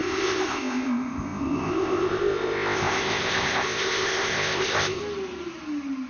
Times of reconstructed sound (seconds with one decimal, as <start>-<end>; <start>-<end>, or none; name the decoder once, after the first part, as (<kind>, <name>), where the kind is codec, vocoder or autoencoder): 0.0-5.0 (codec, ZipCodec)